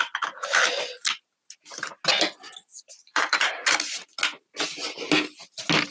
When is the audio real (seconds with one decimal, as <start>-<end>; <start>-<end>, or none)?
0.0-2.7; 3.5-5.9